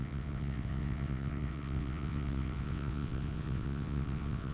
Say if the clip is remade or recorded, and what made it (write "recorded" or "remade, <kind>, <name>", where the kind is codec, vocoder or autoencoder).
remade, vocoder, WaveNeXt